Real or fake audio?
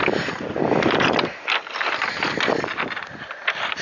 fake